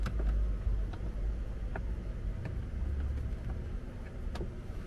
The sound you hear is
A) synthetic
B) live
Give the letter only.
B